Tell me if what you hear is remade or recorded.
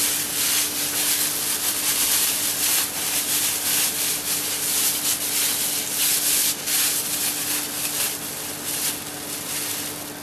recorded